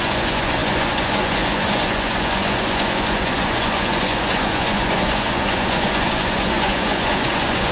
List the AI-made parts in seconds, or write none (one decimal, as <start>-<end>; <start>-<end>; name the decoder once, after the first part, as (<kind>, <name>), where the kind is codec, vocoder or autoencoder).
0.0-7.7 (vocoder, Vocos)